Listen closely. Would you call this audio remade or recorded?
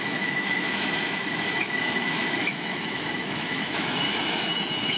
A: remade